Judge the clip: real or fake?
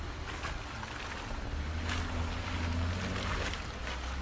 real